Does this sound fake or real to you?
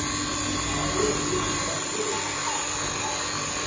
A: real